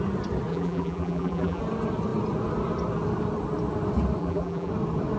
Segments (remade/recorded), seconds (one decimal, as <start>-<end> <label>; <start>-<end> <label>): 0.0-0.5 recorded; 0.5-1.6 remade; 1.6-4.2 recorded; 4.2-4.7 remade; 4.7-5.2 recorded